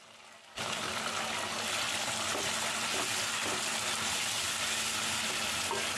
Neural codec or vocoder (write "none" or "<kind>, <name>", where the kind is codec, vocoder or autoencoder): none